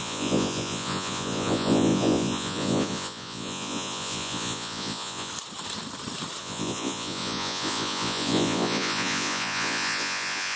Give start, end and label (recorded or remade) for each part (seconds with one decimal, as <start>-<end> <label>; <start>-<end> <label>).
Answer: 0.0-5.3 remade; 5.3-6.4 recorded; 6.4-10.6 remade